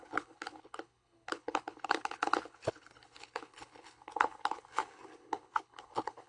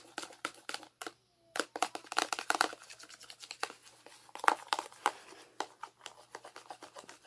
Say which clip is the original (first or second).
second